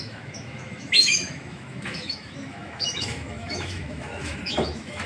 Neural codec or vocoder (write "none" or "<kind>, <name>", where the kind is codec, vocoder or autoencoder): autoencoder, DAC-VAE